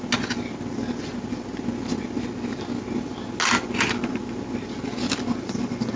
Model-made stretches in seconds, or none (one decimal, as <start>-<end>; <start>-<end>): none